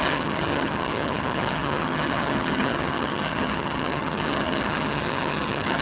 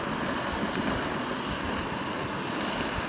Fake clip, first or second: first